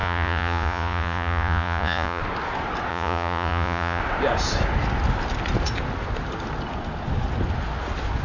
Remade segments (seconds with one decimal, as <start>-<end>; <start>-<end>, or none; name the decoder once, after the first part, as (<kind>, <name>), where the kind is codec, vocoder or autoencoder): 0.0-2.2 (vocoder, Vocos); 2.9-4.0